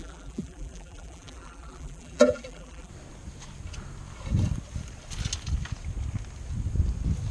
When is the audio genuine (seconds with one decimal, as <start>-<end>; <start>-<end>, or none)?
2.9-7.3